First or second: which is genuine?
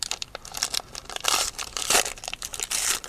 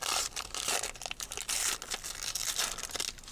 second